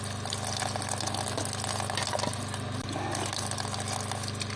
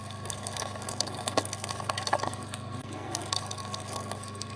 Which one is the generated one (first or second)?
second